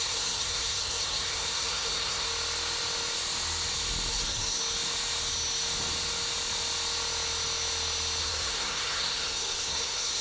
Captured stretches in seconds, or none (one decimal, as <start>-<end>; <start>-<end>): 2.3-4.1; 4.6-8.2